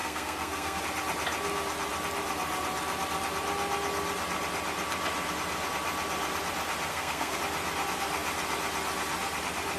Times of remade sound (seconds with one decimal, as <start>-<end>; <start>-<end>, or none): 0.0-0.8; 6.9-7.4